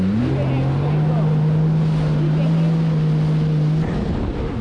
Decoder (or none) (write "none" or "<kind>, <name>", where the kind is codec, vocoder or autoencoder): none